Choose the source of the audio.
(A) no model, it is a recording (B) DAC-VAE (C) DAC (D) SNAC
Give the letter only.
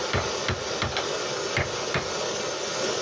A